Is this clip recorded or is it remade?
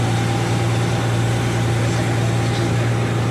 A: recorded